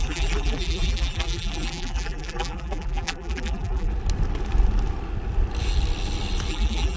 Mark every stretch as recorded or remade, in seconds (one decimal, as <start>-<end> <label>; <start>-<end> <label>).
0.0-3.9 remade; 3.9-6.5 recorded; 6.5-7.0 remade